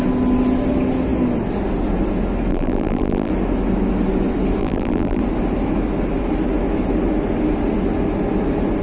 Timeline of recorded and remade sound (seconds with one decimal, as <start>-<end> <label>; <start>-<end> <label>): 0.0-2.5 recorded; 2.5-3.3 remade; 3.3-4.6 recorded; 4.6-5.2 remade; 5.2-8.8 recorded